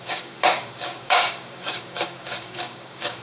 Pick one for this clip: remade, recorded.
remade